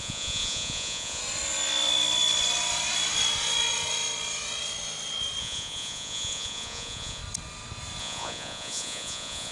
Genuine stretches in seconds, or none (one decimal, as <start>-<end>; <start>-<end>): 1.2-5.4; 7.2-8.0

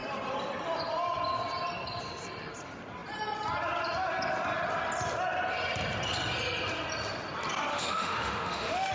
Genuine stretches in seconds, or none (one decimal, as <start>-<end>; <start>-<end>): 0.0-7.7

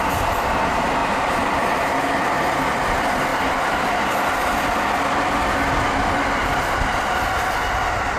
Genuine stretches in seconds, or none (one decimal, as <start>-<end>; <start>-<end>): 0.0-1.0; 2.1-8.2

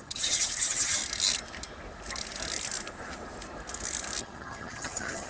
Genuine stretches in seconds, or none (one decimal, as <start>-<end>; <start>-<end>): 1.0-4.2

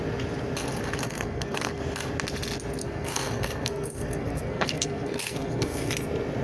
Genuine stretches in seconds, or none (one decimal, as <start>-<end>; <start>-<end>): 0.0-1.0; 1.8-2.8; 5.9-6.4

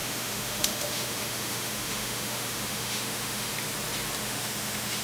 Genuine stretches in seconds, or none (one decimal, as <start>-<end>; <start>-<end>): 3.5-4.2

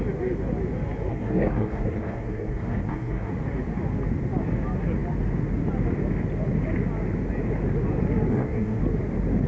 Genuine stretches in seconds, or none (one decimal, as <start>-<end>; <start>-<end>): 0.0-1.1; 3.3-8.3; 8.8-9.5